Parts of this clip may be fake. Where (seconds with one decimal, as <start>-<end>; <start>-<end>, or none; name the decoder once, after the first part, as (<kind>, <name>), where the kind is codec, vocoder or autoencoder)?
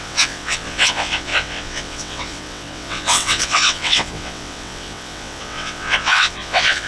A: 0.0-6.9 (vocoder, WaveNeXt)